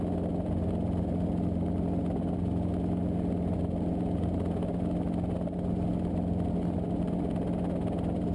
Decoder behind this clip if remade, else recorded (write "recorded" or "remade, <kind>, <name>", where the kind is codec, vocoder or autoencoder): recorded